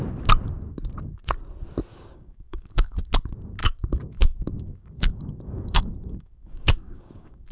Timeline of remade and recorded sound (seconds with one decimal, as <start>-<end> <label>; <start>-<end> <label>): 0.0-1.9 recorded; 1.9-3.1 remade; 3.1-3.6 recorded; 3.6-7.5 remade